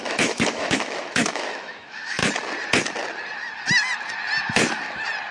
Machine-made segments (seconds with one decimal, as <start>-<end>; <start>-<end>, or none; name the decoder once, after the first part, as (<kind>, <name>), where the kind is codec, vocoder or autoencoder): 0.0-2.2 (autoencoder, DAC-VAE)